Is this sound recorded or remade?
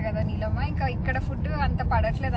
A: remade